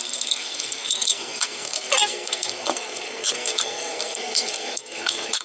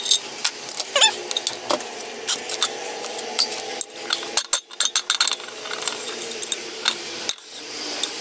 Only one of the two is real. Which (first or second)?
second